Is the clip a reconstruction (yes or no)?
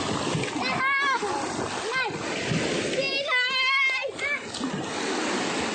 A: no